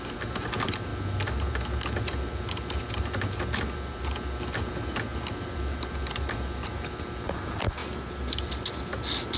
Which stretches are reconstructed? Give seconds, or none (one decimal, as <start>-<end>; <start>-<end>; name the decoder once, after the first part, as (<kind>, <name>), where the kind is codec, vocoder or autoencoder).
none